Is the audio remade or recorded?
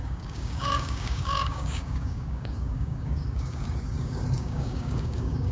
remade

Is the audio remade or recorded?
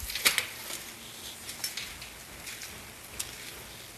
recorded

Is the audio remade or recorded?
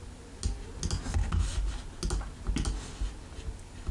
recorded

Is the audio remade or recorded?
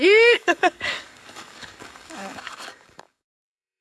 remade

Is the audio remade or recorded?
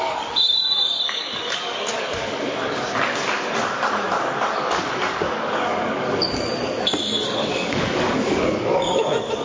remade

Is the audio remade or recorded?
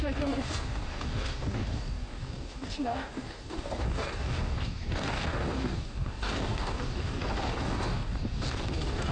remade